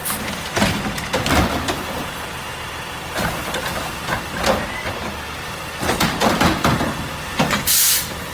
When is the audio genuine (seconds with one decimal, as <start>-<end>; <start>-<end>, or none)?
0.0-1.7; 3.7-5.8; 6.2-7.2